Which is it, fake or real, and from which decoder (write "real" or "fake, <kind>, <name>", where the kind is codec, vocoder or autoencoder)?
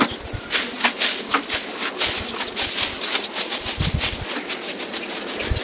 real